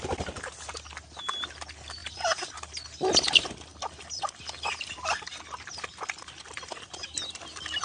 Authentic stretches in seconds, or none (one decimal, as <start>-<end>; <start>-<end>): 0.0-2.0; 2.5-3.7; 5.4-7.8